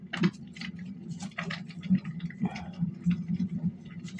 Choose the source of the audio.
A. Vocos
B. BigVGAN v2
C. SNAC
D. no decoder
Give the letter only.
D